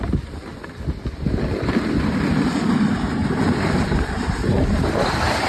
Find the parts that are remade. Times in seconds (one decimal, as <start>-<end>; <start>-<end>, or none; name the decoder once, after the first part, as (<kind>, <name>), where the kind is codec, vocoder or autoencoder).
0.0-0.5 (vocoder, BigVGAN v2); 2.9-5.5